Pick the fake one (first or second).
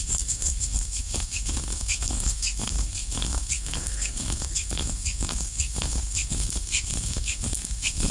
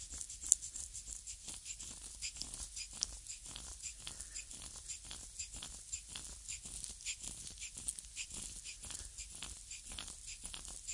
first